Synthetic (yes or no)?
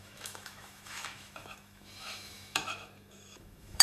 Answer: yes